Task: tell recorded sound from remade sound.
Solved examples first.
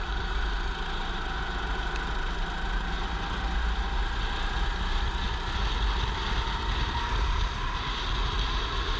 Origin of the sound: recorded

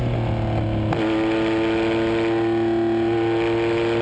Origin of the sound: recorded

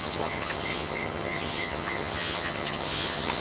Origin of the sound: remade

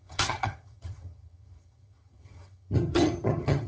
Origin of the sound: remade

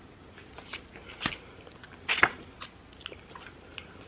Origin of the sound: recorded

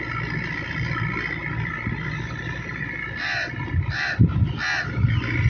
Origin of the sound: recorded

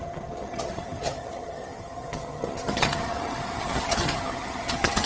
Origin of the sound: remade